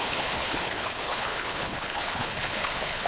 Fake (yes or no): yes